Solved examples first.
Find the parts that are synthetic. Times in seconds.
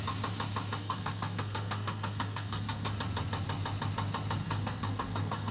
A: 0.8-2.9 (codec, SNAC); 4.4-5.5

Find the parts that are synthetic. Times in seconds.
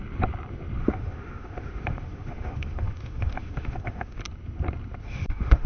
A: 0.8-4.2 (autoencoder, DAC-VAE); 5.0-5.7